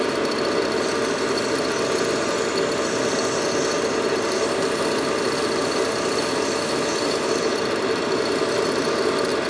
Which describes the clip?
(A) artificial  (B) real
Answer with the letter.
B